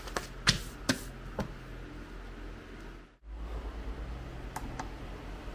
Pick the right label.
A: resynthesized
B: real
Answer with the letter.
B